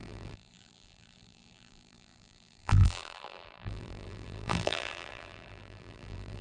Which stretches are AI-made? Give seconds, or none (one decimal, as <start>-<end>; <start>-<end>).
0.0-6.4